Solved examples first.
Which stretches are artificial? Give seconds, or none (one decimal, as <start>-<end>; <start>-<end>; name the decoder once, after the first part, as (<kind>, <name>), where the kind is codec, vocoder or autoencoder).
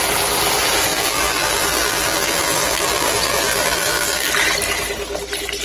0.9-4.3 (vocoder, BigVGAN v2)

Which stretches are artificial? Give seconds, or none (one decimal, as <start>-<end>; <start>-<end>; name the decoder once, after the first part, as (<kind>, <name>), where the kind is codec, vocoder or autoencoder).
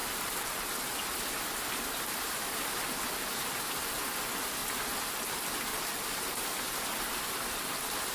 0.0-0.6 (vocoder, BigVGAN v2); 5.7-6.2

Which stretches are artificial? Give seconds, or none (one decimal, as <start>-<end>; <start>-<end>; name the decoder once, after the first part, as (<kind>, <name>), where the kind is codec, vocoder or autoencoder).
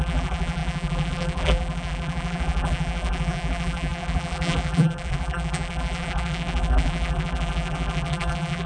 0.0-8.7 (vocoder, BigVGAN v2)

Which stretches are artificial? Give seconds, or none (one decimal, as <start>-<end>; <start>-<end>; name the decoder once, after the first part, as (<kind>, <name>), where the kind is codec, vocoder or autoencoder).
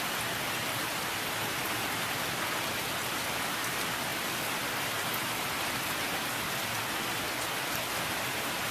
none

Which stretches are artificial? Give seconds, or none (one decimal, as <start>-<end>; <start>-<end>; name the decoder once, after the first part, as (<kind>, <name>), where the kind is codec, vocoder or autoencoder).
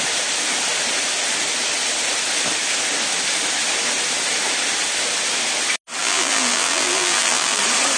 6.0-7.6 (vocoder, BigVGAN v2)